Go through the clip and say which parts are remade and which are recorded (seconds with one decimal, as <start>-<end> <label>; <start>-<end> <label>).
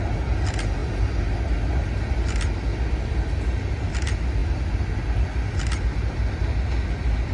0.0-7.3 recorded